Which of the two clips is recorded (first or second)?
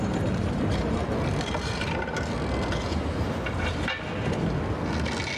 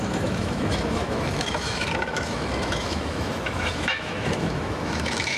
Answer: first